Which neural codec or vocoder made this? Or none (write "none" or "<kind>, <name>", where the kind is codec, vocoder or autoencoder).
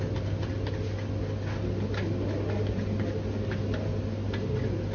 none